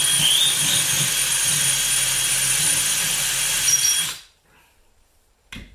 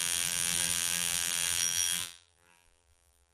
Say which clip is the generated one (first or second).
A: second